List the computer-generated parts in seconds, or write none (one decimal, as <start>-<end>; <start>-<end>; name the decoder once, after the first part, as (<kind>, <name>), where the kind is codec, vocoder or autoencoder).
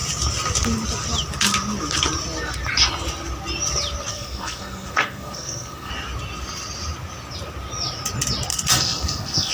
4.1-5.9 (codec, SNAC); 8.5-9.5